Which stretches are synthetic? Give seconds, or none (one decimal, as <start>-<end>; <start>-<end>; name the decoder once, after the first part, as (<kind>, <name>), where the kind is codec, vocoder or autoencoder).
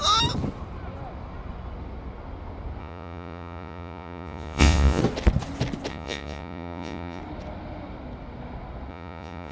2.8-5.0 (vocoder, Vocos); 5.9-7.2; 8.9-9.5